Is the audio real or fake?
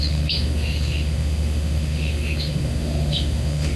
fake